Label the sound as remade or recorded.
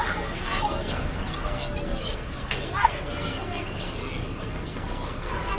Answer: remade